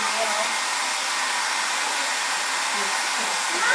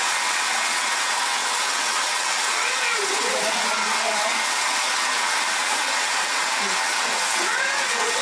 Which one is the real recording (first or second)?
first